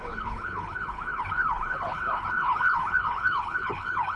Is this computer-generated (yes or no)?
yes